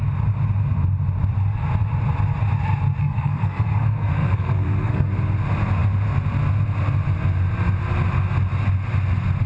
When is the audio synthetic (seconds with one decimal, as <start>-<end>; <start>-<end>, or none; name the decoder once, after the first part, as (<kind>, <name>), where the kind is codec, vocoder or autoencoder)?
3.0-5.1 (codec, SNAC)